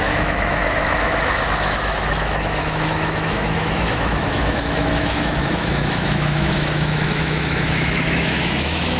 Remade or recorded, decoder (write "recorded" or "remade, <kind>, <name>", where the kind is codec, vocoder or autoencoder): remade, autoencoder, DAC-VAE